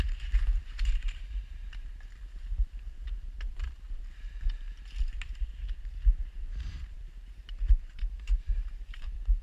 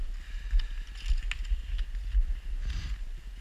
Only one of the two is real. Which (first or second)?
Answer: second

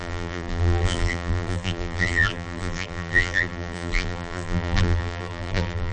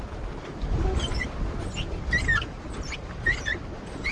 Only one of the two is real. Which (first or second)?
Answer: second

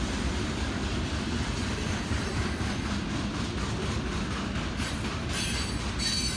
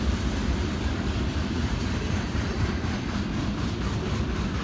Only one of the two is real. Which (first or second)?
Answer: first